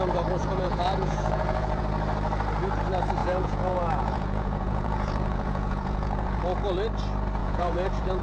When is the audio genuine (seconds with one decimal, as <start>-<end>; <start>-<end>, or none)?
0.0-0.4; 1.8-3.2; 6.4-7.4